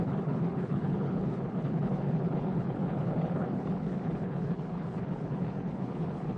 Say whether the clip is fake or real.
fake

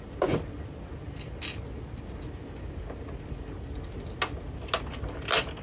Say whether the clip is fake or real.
real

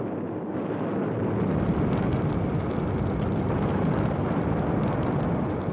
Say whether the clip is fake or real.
real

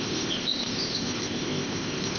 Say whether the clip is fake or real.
fake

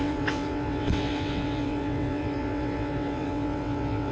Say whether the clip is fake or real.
fake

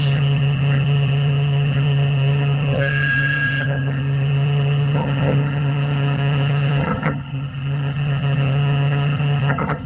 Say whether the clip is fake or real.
fake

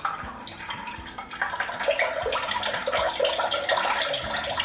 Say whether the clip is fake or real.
real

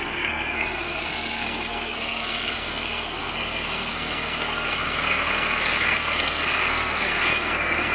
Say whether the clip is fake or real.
fake